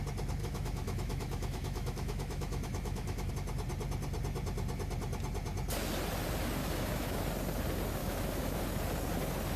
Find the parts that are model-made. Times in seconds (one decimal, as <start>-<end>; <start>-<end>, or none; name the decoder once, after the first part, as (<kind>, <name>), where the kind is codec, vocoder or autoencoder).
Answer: 0.4-3.3 (autoencoder, DAC-VAE); 6.6-7.2; 8.0-8.6